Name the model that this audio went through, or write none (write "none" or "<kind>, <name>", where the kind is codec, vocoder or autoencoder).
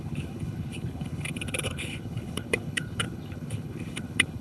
codec, HILCodec